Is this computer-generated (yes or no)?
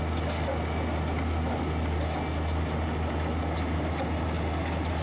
no